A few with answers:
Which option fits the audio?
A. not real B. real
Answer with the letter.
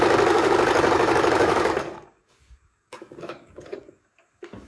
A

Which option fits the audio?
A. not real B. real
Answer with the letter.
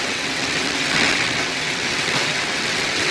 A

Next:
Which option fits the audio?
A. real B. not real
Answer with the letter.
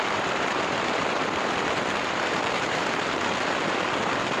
B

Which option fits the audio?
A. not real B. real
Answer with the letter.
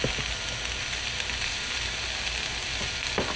B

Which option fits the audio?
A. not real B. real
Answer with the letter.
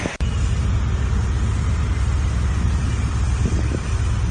B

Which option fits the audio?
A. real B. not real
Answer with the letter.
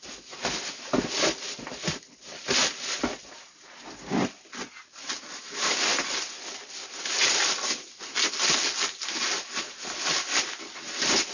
A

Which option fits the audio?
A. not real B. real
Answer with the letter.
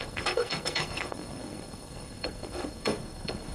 A